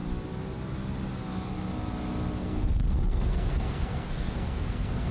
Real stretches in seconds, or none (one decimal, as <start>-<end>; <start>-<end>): 0.0-2.4